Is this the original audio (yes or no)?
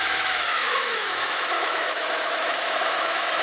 no